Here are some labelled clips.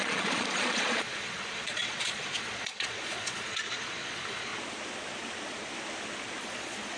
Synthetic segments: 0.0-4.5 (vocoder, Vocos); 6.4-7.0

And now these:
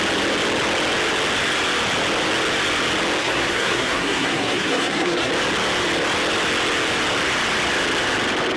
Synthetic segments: 3.2-5.3 (codec, SNAC)

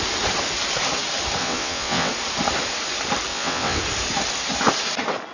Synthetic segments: 1.4-2.1 (vocoder, WaveNeXt); 3.3-3.8

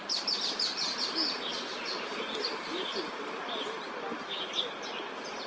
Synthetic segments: 1.5-3.9 (vocoder, BigVGAN v2)